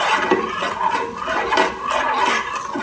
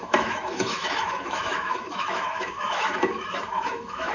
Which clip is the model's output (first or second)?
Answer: second